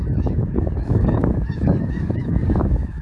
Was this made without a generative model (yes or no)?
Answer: no